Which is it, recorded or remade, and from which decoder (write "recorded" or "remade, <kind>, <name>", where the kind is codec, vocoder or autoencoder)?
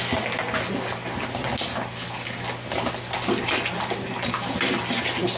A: recorded